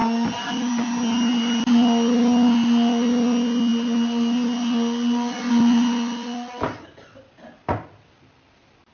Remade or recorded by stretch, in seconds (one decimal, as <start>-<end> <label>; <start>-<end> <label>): 0.0-8.9 recorded